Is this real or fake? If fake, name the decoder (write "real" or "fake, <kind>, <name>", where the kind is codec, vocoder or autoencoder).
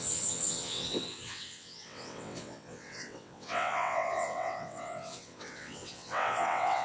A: fake, vocoder, WaveNeXt